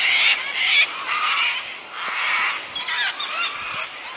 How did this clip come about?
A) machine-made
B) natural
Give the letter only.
B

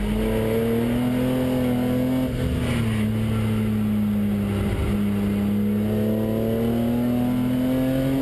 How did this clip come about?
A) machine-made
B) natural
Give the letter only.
B